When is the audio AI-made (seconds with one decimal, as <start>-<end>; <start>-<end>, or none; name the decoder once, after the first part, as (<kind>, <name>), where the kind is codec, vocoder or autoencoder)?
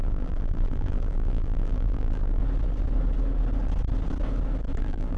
0.0-2.4 (vocoder, BigVGAN v2); 4.8-5.2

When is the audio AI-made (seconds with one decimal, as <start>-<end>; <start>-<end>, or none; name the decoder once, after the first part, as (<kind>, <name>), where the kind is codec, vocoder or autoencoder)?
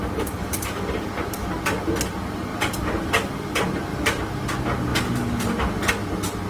0.0-1.1 (vocoder, BigVGAN v2); 2.5-3.3; 3.9-4.4; 4.9-5.9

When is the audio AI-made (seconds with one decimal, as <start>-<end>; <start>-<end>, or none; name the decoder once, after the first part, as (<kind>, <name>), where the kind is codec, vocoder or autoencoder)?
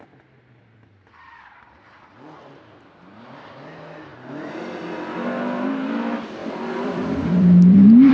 4.1-4.8 (vocoder, BigVGAN v2); 6.4-8.1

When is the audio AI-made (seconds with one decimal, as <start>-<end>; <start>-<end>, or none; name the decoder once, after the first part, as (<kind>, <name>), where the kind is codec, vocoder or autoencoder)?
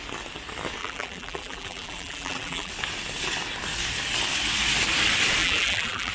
0.8-2.7 (vocoder, BigVGAN v2); 5.4-6.1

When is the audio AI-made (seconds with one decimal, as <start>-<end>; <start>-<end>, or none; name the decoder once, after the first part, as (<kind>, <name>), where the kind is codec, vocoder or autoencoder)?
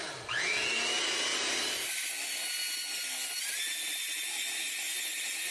1.3-2.1 (vocoder, BigVGAN v2)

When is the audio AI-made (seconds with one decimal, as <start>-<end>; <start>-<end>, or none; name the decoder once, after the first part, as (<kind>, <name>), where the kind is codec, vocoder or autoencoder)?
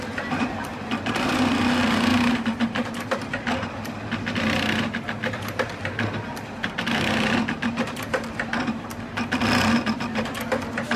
2.1-3.3 (vocoder, BigVGAN v2)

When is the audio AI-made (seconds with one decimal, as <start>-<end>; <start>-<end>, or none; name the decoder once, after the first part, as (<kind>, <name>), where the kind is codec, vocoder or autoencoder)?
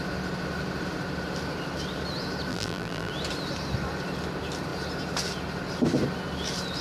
2.5-3.1 (vocoder, BigVGAN v2)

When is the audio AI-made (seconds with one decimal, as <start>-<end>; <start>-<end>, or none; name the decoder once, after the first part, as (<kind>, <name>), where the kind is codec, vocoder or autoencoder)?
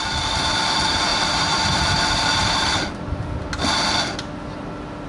1.1-3.3 (vocoder, BigVGAN v2)